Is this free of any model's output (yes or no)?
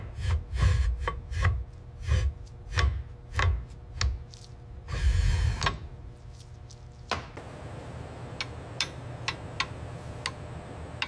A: yes